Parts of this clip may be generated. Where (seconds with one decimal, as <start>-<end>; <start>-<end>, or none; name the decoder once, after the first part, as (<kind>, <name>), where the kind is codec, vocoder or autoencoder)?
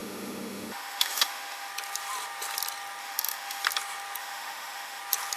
0.0-1.7 (autoencoder, DAC-VAE); 3.0-3.6; 4.2-5.0